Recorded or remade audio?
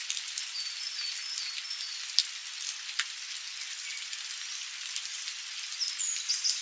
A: recorded